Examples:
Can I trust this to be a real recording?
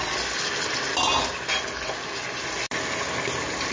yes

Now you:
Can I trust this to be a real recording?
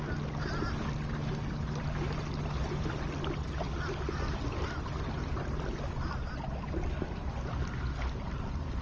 yes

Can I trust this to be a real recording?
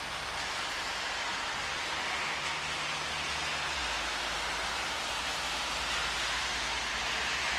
yes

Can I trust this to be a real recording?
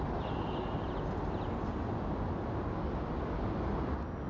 yes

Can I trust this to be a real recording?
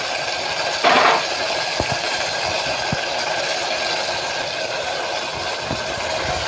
yes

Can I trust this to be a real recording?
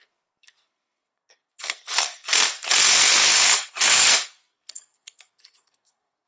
no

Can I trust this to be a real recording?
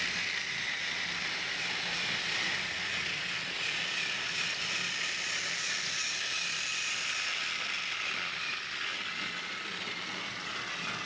yes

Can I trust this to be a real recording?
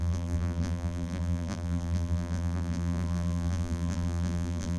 no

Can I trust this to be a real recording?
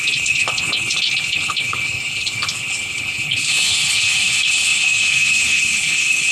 no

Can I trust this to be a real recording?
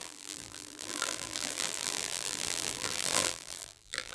no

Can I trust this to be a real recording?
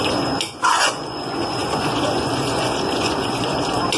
no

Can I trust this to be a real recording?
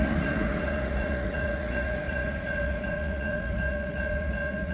no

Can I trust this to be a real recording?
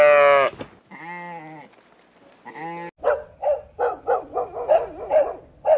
yes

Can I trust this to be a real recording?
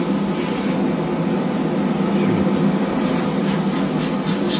yes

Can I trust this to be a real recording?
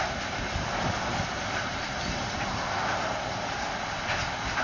yes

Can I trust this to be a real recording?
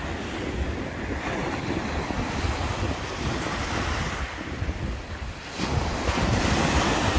yes